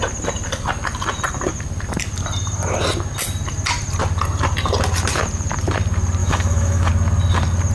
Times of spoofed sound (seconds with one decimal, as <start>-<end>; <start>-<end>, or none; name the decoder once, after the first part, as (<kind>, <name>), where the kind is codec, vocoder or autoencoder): 6.2-6.9 (autoencoder, DAC-VAE)

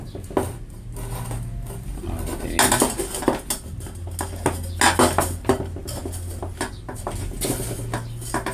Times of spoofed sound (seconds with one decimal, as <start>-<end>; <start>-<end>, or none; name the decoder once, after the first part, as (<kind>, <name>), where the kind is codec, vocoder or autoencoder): none